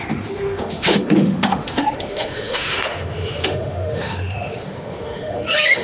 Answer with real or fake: fake